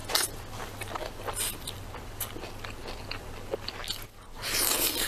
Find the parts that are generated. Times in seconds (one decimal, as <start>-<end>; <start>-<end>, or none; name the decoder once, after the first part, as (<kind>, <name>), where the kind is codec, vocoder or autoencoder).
0.0-2.4 (vocoder, BigVGAN v2)